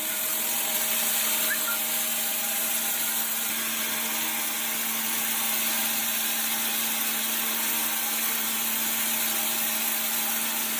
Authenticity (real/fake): real